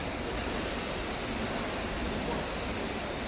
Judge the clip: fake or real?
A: real